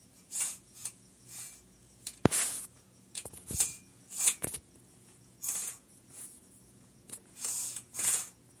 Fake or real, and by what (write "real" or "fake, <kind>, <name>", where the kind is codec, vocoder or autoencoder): fake, vocoder, Vocos